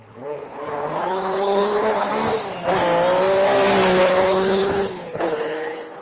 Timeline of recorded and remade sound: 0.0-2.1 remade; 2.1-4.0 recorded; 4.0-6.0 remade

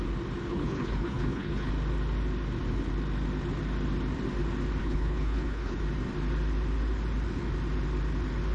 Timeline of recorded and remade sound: 0.0-0.5 recorded; 0.5-1.7 remade; 1.7-4.8 recorded; 4.8-5.8 remade; 5.8-8.5 recorded